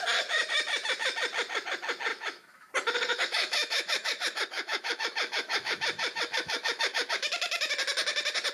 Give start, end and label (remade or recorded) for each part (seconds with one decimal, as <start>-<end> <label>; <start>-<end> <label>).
0.0-2.1 recorded; 2.1-2.7 remade; 2.7-3.1 recorded; 3.1-7.7 remade; 7.7-8.5 recorded